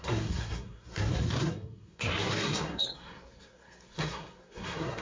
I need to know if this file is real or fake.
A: fake